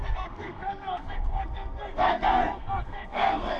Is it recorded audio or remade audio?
remade